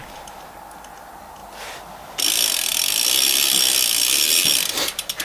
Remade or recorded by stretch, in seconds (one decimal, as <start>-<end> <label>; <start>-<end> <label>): 0.0-5.2 recorded